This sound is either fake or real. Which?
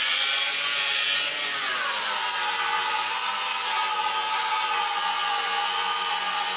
fake